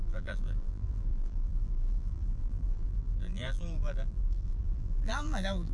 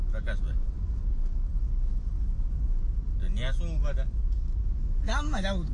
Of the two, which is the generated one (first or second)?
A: first